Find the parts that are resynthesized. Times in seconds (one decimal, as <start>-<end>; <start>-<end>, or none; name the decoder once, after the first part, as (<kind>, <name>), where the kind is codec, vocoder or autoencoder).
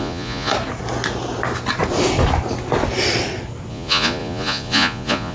0.0-0.5 (vocoder, Vocos); 3.7-5.3